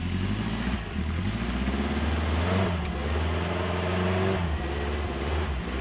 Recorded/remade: recorded